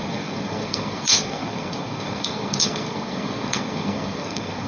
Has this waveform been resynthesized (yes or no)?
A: yes